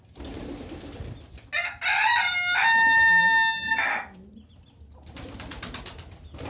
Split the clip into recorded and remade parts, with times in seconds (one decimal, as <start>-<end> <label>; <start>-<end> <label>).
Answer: 0.0-6.5 recorded